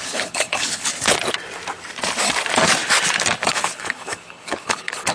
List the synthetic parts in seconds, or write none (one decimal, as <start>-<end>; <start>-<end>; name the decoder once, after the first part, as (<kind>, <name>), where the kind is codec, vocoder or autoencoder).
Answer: 0.0-0.9 (codec, HILCodec); 3.5-5.1